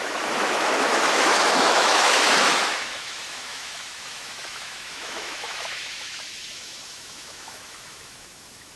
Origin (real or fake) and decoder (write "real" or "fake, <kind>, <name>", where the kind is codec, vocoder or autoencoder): fake, autoencoder, DAC-VAE